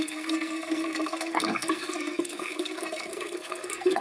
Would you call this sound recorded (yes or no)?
no